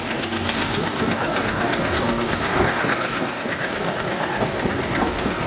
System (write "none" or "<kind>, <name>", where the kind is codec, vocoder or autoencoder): codec, DAC